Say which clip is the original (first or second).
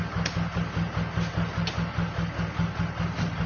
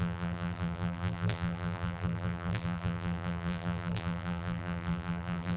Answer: first